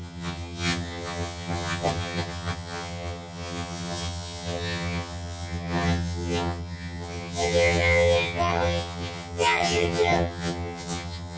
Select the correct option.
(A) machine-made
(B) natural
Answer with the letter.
A